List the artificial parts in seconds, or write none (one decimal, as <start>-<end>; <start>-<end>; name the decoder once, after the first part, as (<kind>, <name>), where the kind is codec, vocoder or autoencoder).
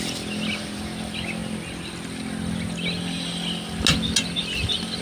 none